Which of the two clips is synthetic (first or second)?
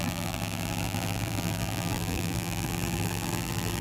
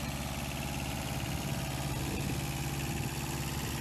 first